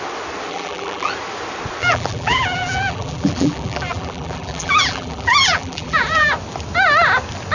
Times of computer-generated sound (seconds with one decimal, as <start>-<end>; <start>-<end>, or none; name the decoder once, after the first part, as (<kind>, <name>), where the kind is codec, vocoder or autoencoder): 0.5-1.1 (vocoder, BigVGAN v2); 1.8-6.3